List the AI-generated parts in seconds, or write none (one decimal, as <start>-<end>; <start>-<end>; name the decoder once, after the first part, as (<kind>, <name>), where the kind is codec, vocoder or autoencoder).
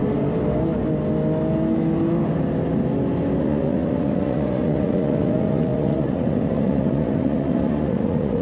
3.4-8.4 (vocoder, Vocos)